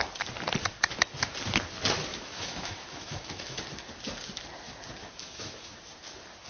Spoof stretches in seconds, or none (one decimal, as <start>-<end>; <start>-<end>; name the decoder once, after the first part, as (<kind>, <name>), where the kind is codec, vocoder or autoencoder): 2.1-3.6 (autoencoder, DAC-VAE); 5.0-5.8